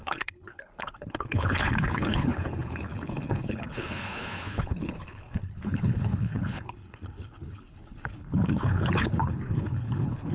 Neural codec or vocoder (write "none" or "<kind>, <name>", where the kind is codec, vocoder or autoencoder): codec, HILCodec